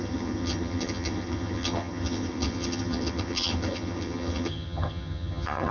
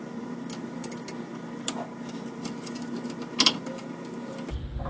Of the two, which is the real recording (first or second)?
second